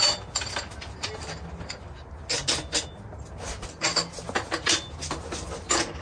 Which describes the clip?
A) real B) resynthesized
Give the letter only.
A